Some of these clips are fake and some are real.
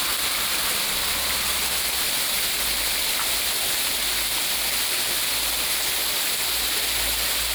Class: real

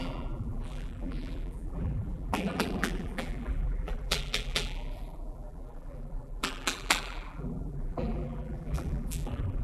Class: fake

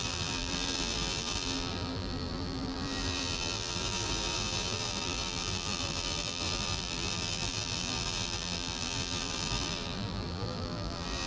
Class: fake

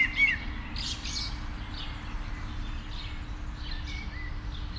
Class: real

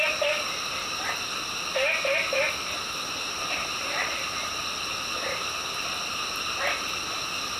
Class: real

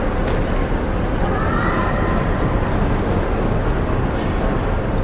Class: real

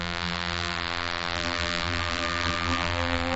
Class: fake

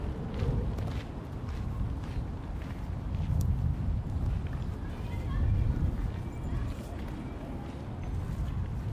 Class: real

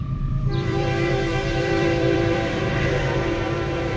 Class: fake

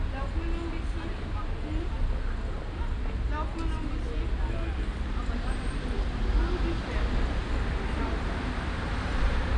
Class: real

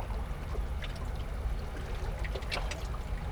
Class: real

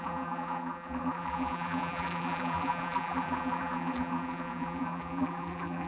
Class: fake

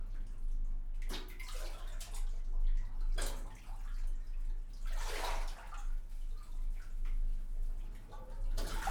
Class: real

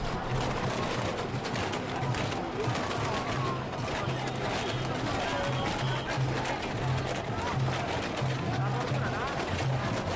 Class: real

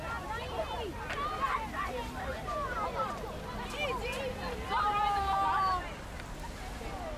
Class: real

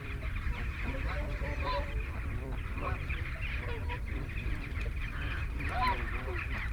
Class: fake